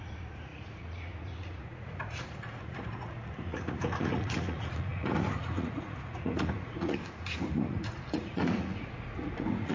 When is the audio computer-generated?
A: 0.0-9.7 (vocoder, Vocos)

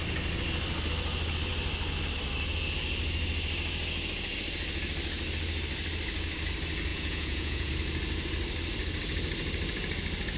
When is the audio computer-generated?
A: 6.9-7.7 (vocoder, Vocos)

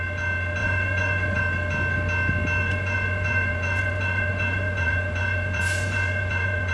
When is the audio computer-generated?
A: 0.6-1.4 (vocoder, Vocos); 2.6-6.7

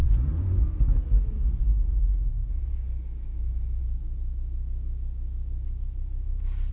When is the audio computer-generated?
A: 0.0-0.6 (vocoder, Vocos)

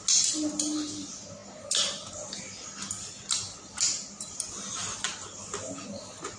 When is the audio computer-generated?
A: none

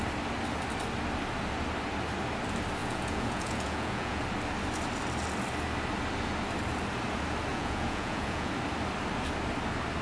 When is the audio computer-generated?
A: 2.8-4.2 (vocoder, Vocos); 7.5-8.5